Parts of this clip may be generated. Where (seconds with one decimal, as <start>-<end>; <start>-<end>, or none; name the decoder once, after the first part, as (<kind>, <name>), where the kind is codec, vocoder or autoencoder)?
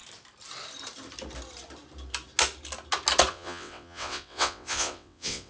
3.3-5.5 (vocoder, WaveNeXt)